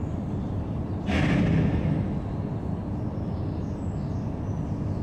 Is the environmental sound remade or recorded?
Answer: recorded